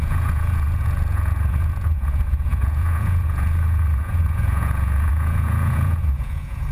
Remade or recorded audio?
remade